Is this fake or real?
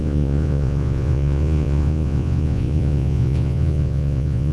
fake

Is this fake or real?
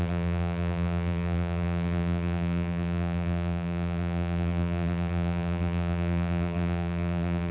fake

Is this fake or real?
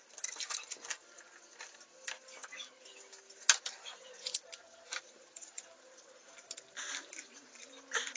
real